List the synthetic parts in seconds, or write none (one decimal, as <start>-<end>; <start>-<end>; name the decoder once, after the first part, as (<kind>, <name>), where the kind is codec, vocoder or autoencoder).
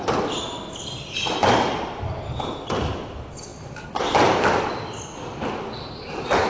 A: none